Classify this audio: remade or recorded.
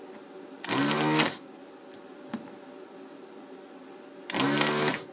recorded